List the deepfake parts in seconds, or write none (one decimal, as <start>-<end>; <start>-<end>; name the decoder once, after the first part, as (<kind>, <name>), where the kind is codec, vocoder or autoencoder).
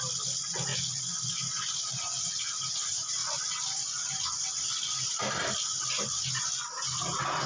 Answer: none